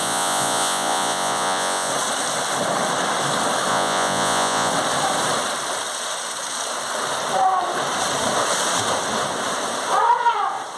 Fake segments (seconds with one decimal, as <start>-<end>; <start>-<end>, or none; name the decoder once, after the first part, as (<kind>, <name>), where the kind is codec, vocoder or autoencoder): 0.0-1.9 (vocoder, Vocos); 3.7-4.7